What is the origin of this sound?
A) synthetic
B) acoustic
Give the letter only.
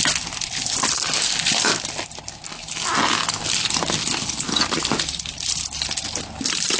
B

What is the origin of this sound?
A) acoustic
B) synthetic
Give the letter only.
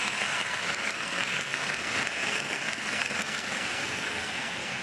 B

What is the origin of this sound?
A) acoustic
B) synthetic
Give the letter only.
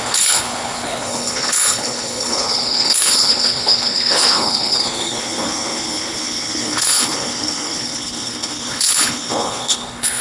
B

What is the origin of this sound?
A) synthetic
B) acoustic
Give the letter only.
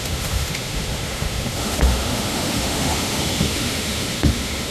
A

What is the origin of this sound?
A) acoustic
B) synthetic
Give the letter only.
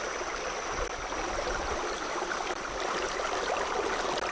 A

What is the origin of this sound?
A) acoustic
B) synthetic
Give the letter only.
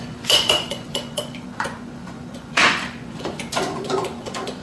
B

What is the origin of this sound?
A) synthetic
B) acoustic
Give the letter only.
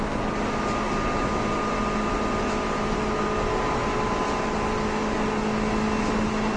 B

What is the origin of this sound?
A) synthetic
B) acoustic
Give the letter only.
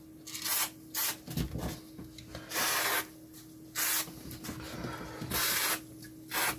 B